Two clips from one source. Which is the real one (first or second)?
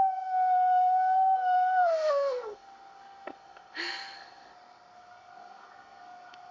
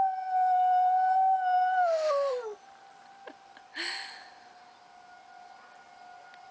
second